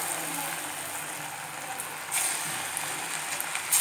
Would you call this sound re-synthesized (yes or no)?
no